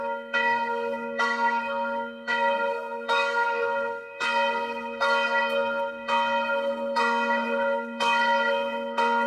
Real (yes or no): no